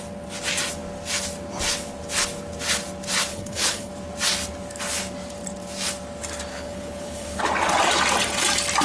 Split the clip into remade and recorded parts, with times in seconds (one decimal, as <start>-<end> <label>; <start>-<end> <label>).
0.0-3.3 recorded; 3.3-3.9 remade; 3.9-6.5 recorded; 6.5-7.4 remade; 7.4-8.8 recorded